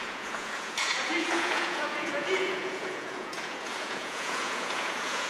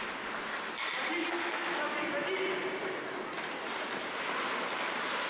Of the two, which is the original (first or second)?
second